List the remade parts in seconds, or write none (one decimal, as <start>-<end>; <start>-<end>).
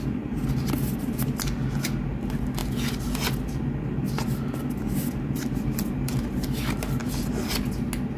none